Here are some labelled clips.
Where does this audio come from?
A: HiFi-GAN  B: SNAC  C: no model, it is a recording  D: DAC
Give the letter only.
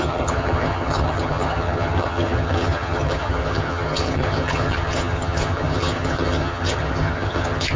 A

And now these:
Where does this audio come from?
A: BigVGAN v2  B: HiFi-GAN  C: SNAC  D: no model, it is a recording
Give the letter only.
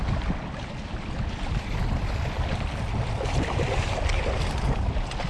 D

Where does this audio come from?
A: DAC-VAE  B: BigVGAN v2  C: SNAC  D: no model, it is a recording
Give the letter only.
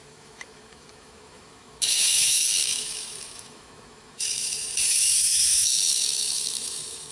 A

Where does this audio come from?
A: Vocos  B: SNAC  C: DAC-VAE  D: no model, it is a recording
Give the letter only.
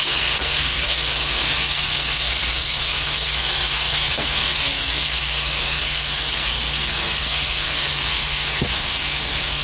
B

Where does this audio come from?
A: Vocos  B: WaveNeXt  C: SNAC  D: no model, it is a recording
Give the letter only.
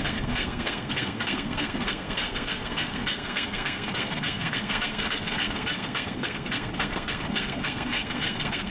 C